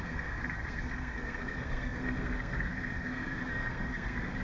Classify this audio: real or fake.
fake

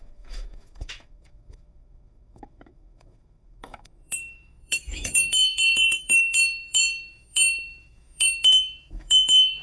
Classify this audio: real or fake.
fake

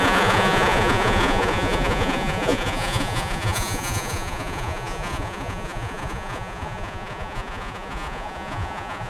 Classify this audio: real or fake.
fake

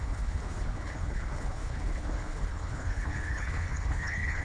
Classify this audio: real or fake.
fake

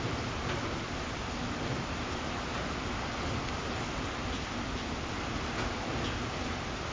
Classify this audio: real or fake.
real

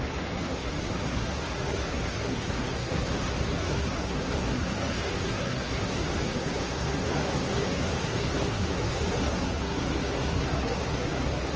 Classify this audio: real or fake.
fake